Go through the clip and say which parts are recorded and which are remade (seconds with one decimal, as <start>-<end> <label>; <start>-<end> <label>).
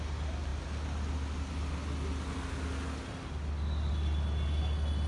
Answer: 0.0-5.1 recorded